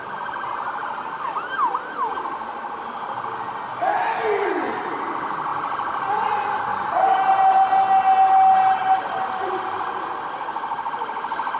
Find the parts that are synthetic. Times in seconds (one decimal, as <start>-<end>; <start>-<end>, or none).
none